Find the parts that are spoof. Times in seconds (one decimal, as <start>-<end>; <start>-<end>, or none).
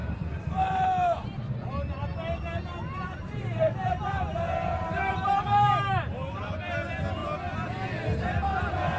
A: 0.0-1.4; 2.0-6.4